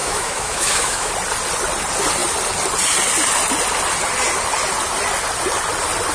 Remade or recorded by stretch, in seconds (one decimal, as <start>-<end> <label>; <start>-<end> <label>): 0.0-1.1 remade; 1.1-6.1 recorded